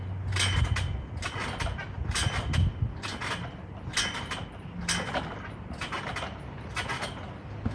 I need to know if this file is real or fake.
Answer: real